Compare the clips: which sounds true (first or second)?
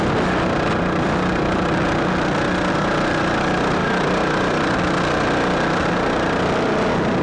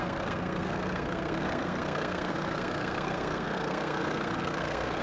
first